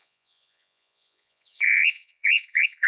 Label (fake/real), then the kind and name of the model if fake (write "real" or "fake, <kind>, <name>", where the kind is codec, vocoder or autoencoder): fake, vocoder, Vocos